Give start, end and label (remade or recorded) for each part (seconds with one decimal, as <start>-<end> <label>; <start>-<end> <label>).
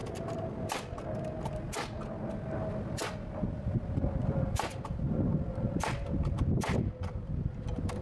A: 0.0-8.0 recorded